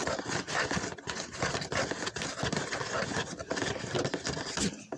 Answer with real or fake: real